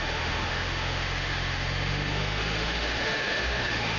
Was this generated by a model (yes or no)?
yes